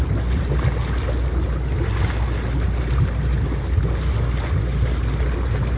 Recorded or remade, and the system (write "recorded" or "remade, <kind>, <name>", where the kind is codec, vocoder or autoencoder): recorded